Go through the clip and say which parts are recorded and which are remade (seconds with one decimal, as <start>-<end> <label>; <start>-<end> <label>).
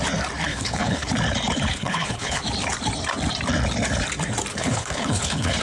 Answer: 0.0-0.5 recorded; 0.5-1.1 remade; 1.1-1.7 recorded; 1.7-2.4 remade; 2.4-4.5 recorded; 4.5-5.6 remade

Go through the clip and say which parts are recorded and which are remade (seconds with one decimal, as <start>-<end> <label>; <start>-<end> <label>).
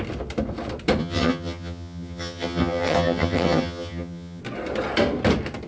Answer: 0.0-1.0 recorded; 1.0-4.4 remade; 4.4-5.7 recorded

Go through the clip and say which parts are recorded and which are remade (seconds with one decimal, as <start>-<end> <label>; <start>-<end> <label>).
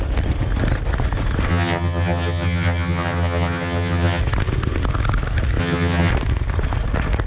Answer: 0.0-1.5 recorded; 1.5-4.2 remade; 4.2-5.6 recorded; 5.6-6.1 remade; 6.1-7.3 recorded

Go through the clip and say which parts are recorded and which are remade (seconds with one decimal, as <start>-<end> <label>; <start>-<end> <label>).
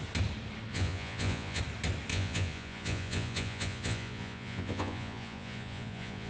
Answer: 0.0-0.7 recorded; 0.7-1.6 remade; 1.6-2.1 recorded; 2.1-6.3 remade